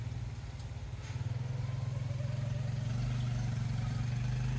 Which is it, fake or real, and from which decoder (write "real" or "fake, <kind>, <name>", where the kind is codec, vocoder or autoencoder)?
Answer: real